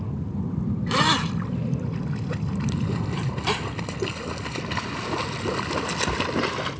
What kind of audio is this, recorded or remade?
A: recorded